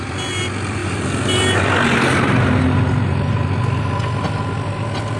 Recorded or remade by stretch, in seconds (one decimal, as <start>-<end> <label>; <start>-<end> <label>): 0.0-5.2 recorded

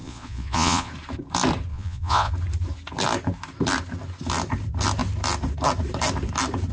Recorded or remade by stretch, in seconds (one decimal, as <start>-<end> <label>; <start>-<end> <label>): 0.0-0.9 remade; 0.9-1.7 recorded; 1.7-2.3 remade; 2.3-6.7 recorded

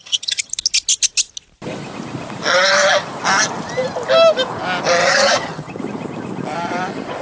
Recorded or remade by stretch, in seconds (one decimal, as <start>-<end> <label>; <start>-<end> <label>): 0.0-0.5 remade; 0.5-5.0 recorded; 5.0-5.8 remade; 5.8-7.2 recorded

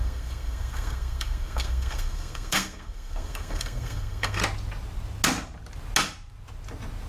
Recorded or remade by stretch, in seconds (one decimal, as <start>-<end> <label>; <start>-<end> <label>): 0.0-4.4 remade; 4.4-7.1 recorded

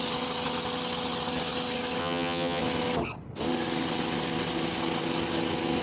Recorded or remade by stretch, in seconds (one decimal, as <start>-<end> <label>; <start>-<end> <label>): 0.0-2.0 recorded; 2.0-2.6 remade; 2.6-5.8 recorded

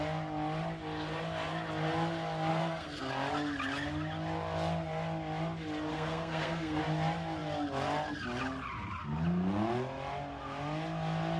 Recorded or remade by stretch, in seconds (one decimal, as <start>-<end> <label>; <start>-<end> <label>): 0.0-2.5 recorded; 2.5-3.1 remade; 3.1-5.9 recorded; 5.9-6.8 remade; 6.8-11.4 recorded

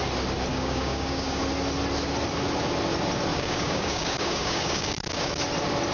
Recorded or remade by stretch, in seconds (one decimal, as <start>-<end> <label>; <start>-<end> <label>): 0.0-0.5 recorded; 0.5-1.4 remade; 1.4-3.3 recorded; 3.3-5.4 remade; 5.4-5.9 recorded